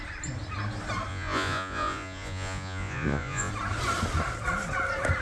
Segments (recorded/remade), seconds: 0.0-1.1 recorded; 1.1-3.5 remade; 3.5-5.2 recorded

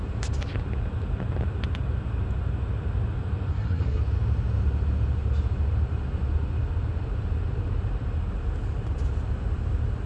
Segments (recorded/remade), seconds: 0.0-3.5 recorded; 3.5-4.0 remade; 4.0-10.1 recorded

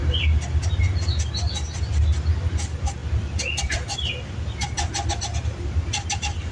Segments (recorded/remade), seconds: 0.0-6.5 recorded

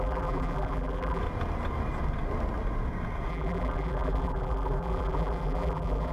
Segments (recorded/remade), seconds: 0.0-1.2 remade; 1.2-3.3 recorded; 3.3-6.1 remade